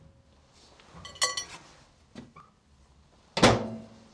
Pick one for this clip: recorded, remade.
recorded